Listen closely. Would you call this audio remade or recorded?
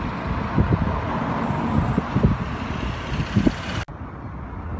recorded